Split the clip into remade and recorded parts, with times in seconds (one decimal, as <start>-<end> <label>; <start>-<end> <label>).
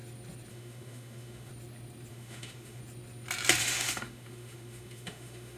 0.0-0.5 recorded; 0.5-1.5 remade; 1.5-2.1 recorded; 2.1-2.8 remade; 2.8-3.6 recorded; 3.6-5.6 remade